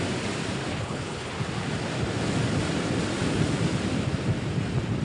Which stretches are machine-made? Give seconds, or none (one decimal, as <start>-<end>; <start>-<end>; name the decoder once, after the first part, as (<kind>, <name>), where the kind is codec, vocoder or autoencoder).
0.7-1.3 (codec, HILCodec)